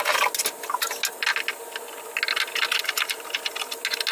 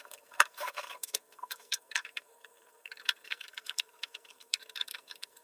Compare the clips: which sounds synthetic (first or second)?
second